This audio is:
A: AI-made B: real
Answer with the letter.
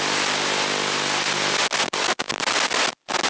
B